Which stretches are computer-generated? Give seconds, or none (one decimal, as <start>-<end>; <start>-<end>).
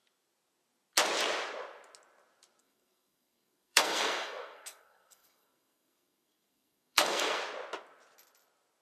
2.6-7.4